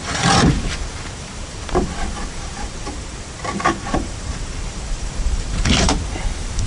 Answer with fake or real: fake